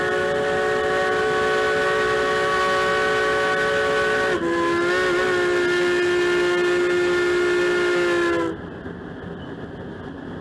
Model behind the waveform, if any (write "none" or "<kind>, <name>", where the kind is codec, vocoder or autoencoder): none